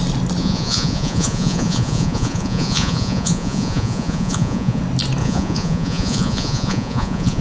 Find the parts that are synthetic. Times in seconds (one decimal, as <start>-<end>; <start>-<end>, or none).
0.4-4.8; 5.2-7.4